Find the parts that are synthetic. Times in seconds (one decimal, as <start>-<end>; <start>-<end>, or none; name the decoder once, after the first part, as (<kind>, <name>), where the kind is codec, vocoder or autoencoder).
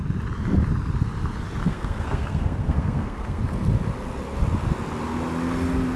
1.6-3.4 (codec, SNAC)